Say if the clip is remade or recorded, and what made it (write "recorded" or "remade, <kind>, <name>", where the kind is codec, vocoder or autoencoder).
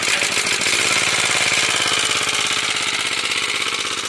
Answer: recorded